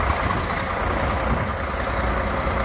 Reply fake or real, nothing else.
real